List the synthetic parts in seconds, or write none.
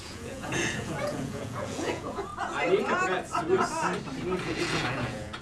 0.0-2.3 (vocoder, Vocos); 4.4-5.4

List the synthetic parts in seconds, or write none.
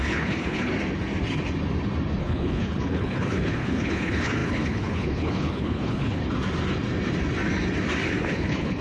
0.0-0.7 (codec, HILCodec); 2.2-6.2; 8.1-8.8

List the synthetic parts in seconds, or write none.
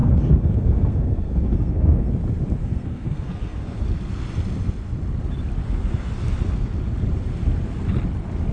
0.0-2.1 (codec, SNAC); 2.6-3.8; 5.6-6.1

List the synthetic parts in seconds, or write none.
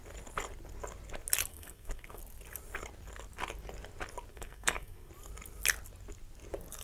1.5-2.2 (codec, SNAC); 4.3-5.1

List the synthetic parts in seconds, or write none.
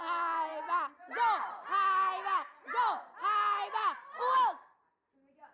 none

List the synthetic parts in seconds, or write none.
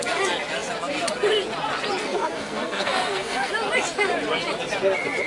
2.0-3.5 (codec, SNAC)